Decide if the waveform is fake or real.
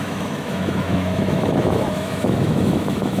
fake